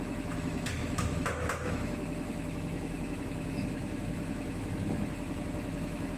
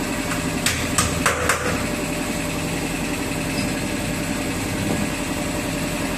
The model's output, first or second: first